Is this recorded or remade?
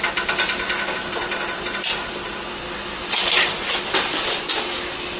recorded